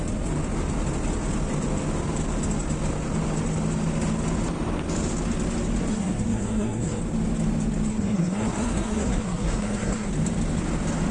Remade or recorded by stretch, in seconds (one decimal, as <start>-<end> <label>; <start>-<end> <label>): 0.0-5.9 recorded; 5.9-7.0 remade; 7.0-7.9 recorded; 7.9-10.1 remade; 10.1-11.1 recorded